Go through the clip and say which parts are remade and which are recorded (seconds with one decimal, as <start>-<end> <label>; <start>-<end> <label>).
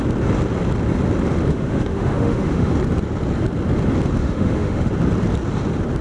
0.0-1.5 recorded; 1.5-2.7 remade; 2.7-4.2 recorded; 4.2-4.9 remade; 4.9-6.0 recorded